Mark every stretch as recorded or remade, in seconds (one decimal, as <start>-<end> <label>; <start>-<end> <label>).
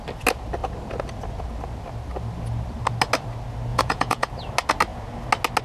0.0-3.7 recorded; 3.7-4.3 remade; 4.3-5.6 recorded